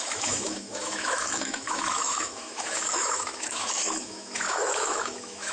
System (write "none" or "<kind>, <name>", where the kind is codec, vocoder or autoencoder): autoencoder, DAC-VAE